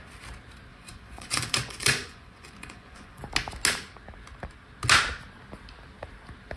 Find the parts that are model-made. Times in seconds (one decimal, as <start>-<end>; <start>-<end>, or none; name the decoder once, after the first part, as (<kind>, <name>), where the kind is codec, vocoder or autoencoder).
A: 0.7-3.2 (vocoder, Vocos)

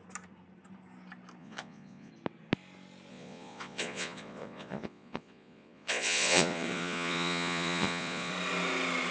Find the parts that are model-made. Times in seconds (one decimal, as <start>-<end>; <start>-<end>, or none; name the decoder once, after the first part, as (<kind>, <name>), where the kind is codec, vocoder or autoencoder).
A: 1.4-2.1 (vocoder, Vocos); 3.1-8.3

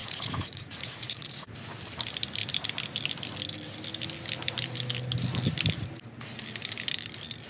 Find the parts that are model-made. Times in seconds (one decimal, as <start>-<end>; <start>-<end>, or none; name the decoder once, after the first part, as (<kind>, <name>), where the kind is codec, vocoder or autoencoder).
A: 0.0-1.5 (vocoder, Vocos)

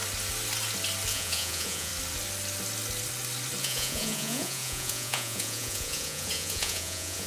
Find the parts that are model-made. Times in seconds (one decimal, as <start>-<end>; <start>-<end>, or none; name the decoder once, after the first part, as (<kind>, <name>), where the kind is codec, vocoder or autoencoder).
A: 1.1-1.9 (vocoder, Vocos); 3.6-7.3

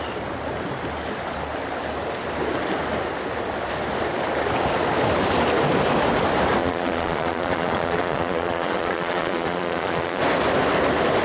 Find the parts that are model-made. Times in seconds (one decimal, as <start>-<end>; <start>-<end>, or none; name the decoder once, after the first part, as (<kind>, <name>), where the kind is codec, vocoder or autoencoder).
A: 6.6-10.2 (vocoder, Vocos)

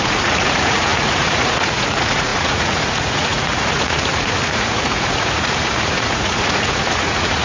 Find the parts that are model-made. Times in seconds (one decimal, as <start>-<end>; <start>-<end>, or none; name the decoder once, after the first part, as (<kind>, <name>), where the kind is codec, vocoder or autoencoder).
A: 0.0-7.4 (vocoder, Vocos)